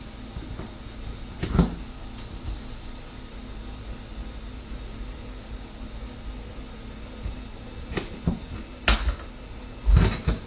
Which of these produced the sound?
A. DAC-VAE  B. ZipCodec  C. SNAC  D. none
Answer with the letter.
D